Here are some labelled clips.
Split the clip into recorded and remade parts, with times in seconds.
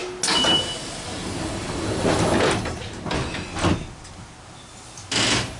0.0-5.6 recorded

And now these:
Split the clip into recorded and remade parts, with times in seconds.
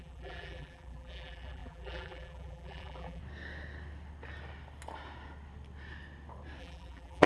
0.0-3.2 remade; 3.2-6.6 recorded; 6.6-7.3 remade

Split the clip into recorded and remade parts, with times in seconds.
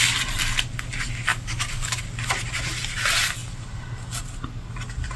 0.0-1.3 recorded; 1.3-2.0 remade; 2.0-5.2 recorded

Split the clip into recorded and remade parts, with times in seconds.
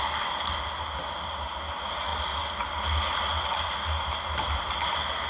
0.0-5.3 recorded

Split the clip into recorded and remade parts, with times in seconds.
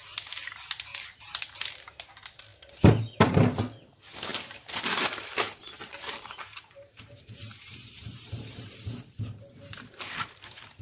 0.0-0.9 recorded; 0.9-2.1 remade; 2.1-4.3 recorded; 4.3-5.3 remade; 5.3-5.9 recorded; 5.9-10.8 remade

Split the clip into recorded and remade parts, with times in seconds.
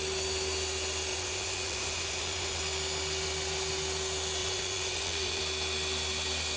0.0-1.1 recorded; 1.1-2.6 remade; 2.6-4.4 recorded; 4.4-5.4 remade; 5.4-6.6 recorded